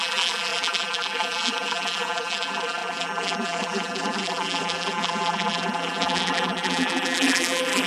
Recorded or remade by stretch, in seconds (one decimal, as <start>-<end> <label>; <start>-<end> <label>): 0.0-7.9 remade